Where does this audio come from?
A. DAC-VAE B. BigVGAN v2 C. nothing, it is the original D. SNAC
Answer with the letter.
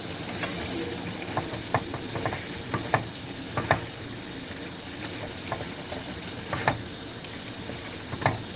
C